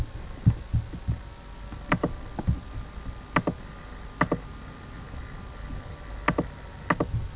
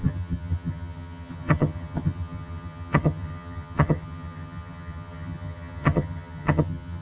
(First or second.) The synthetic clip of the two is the second